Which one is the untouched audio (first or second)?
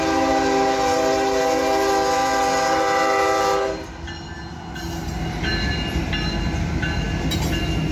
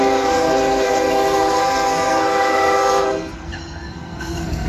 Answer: first